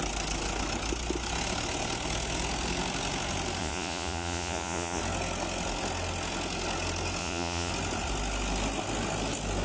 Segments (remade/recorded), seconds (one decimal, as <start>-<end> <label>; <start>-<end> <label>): 0.0-3.6 recorded; 3.6-5.0 remade; 5.0-7.2 recorded; 7.2-7.7 remade; 7.7-9.6 recorded